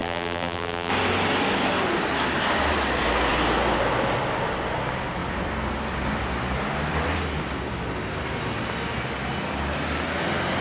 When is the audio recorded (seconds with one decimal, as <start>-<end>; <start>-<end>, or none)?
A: 0.9-10.6